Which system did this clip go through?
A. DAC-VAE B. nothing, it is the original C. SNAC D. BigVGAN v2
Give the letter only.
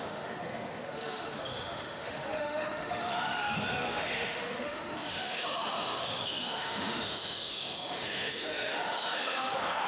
A